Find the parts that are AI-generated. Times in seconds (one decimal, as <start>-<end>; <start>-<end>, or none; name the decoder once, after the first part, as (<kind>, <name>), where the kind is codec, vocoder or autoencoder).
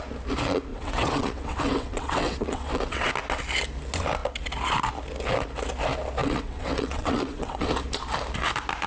0.7-3.1 (vocoder, WaveNeXt); 6.2-7.7